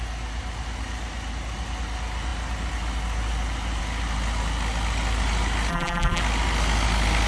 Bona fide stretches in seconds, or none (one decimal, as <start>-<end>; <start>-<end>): 0.0-5.7; 6.2-7.3